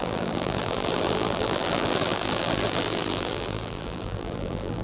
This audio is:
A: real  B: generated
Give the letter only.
B